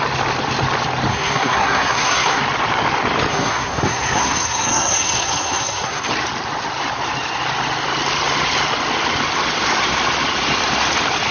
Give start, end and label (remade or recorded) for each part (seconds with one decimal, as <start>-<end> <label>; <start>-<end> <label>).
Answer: 0.0-1.1 recorded; 1.1-2.4 remade; 2.4-3.3 recorded; 3.3-6.1 remade; 6.1-11.3 recorded